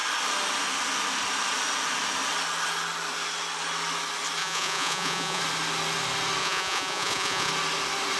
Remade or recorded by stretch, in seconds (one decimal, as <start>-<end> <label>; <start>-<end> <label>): 0.0-4.4 recorded; 4.4-5.4 remade; 5.4-6.4 recorded; 6.4-7.5 remade; 7.5-8.2 recorded